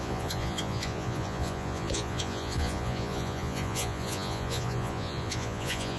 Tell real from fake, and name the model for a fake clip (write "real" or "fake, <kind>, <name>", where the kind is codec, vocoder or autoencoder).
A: fake, vocoder, Vocos